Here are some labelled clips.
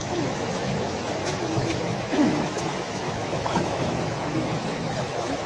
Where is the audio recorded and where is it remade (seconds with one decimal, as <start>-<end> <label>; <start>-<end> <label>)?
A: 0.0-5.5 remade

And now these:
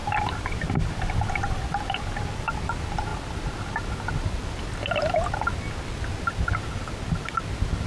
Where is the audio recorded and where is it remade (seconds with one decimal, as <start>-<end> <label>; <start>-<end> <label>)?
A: 0.0-1.3 remade; 1.3-7.9 recorded

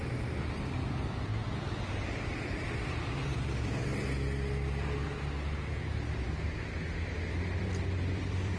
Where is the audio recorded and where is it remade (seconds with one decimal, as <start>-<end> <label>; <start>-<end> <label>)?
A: 0.0-3.8 remade; 3.8-7.3 recorded; 7.3-8.6 remade